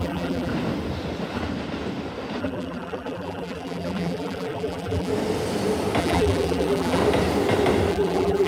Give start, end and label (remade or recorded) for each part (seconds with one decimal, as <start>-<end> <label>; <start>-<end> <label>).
0.0-0.5 remade; 0.5-2.4 recorded; 2.4-5.1 remade; 5.1-6.0 recorded; 6.0-7.0 remade; 7.0-7.9 recorded; 7.9-8.5 remade